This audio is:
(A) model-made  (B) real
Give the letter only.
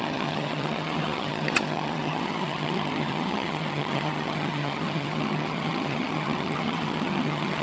A